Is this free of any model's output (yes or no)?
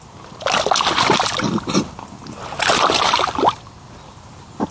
yes